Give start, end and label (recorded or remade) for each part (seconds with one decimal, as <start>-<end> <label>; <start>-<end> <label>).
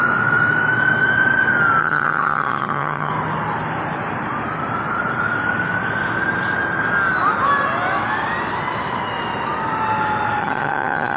0.0-1.8 recorded; 1.8-3.1 remade; 3.1-10.4 recorded; 10.4-11.2 remade